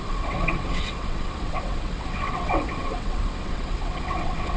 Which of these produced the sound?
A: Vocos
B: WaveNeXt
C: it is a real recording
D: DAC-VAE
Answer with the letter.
B